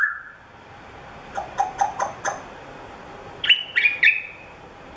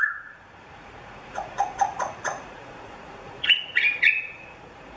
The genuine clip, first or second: first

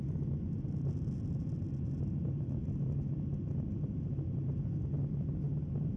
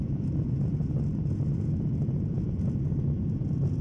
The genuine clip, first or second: first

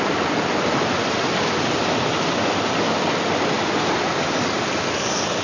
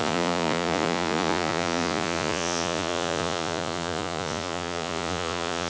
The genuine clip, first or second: first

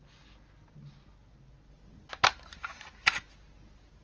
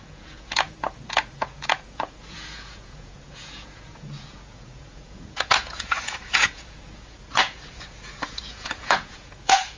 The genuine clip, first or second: first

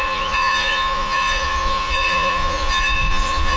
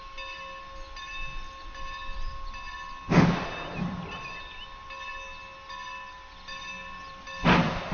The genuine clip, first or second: second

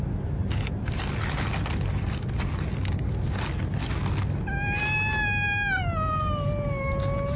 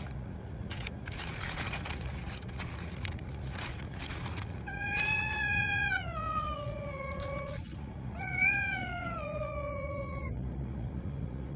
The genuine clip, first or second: first